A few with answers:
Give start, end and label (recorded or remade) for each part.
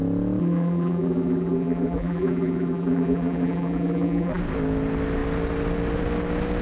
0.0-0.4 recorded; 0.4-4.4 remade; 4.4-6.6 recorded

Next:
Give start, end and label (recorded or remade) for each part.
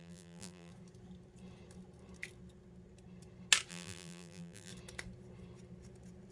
0.0-0.7 remade; 0.7-3.7 recorded; 3.7-4.7 remade; 4.7-6.3 recorded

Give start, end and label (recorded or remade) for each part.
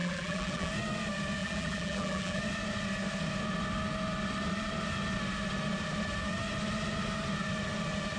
0.0-0.7 remade; 0.7-1.4 recorded; 1.4-2.4 remade; 2.4-8.2 recorded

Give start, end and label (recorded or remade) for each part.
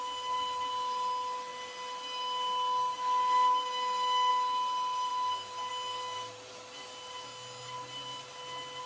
0.0-8.9 recorded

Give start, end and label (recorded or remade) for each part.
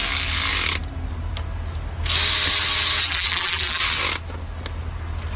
0.0-3.0 recorded; 3.0-3.8 remade; 3.8-5.4 recorded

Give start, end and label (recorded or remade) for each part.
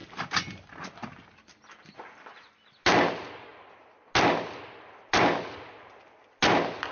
0.0-6.9 recorded